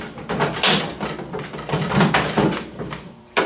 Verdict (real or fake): real